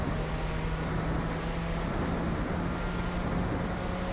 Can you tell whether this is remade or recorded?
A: recorded